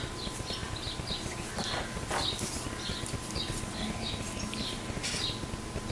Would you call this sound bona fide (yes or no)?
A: yes